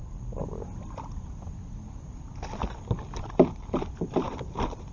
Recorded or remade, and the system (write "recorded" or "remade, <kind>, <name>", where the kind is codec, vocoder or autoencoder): recorded